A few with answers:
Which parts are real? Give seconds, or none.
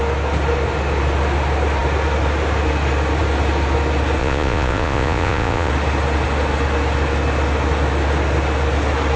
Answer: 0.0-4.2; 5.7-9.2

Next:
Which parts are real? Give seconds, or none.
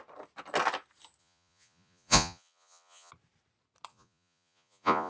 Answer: 0.0-1.2; 3.1-3.9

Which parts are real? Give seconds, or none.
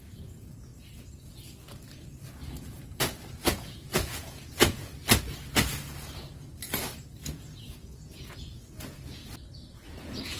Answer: 0.7-3.3; 5.0-7.3; 9.2-9.9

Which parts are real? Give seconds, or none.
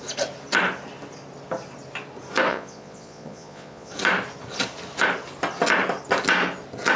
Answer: 0.0-2.5; 3.9-7.0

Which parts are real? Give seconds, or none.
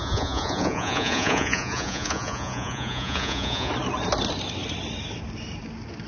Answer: 3.7-6.1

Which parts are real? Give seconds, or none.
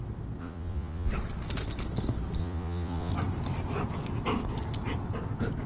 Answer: 0.0-0.4; 1.1-2.4; 3.1-5.7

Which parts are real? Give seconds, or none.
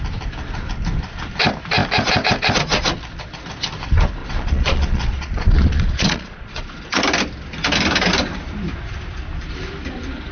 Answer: 0.0-4.2; 7.0-10.3